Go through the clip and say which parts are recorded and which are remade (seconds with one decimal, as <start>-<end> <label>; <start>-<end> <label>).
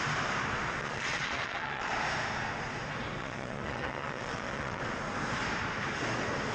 0.0-0.8 recorded; 0.8-1.9 remade; 1.9-3.2 recorded; 3.2-4.8 remade; 4.8-6.5 recorded